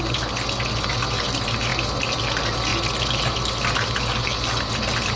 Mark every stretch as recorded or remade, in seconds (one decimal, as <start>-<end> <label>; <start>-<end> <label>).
0.0-5.2 recorded